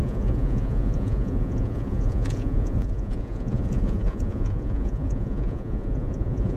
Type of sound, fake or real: fake